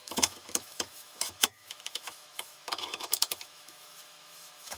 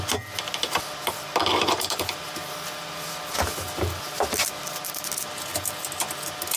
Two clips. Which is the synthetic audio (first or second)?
first